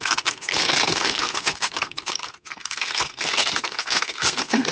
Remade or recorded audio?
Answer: remade